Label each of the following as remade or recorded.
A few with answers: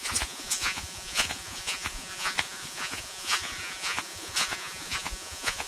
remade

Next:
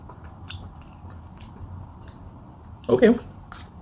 recorded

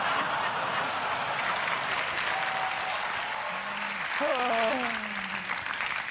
recorded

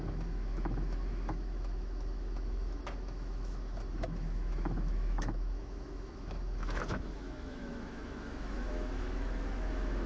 remade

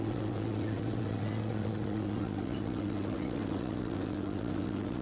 remade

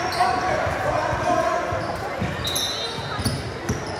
recorded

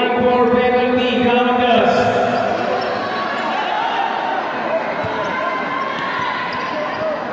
recorded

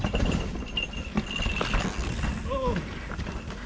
recorded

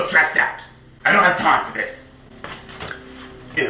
recorded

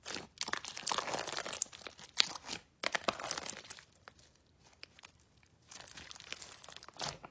recorded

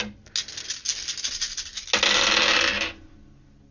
recorded